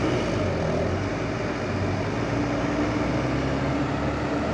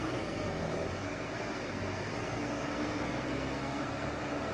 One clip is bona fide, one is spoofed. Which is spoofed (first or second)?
second